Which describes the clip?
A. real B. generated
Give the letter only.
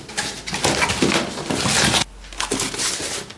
A